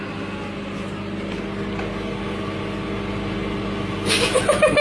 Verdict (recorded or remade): recorded